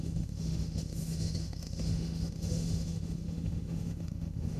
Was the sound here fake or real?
fake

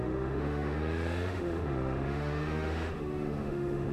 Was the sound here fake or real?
fake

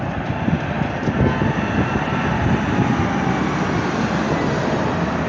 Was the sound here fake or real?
real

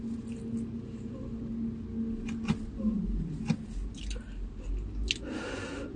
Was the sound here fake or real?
real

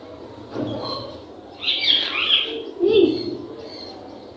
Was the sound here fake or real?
real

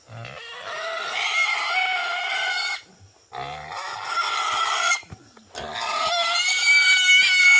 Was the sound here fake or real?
real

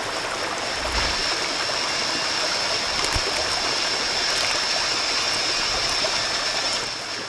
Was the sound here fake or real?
real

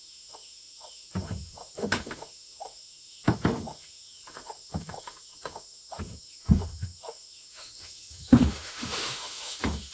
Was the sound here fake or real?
fake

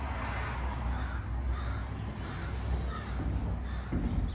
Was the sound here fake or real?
real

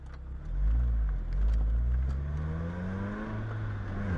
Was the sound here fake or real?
real